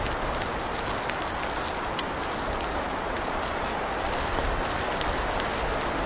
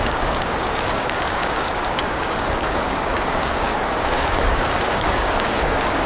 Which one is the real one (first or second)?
first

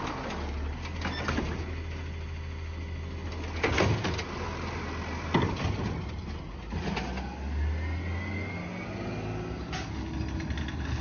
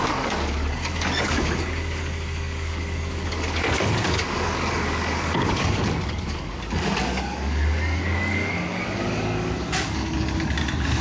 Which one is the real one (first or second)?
first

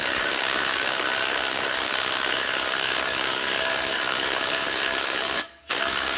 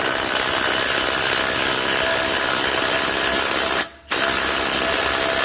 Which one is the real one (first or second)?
second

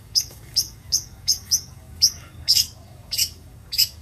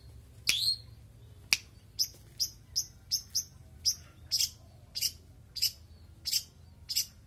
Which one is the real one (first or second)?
second